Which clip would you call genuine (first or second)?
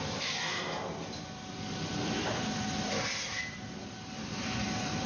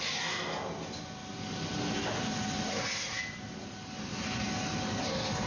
second